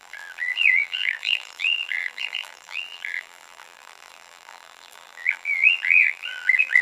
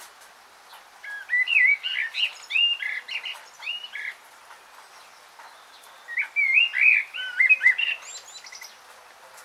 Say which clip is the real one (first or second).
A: second